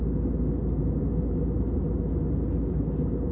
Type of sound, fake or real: real